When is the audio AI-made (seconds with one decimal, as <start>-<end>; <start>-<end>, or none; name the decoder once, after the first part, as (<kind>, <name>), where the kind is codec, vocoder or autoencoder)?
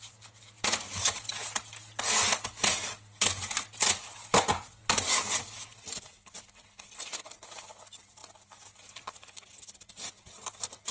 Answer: none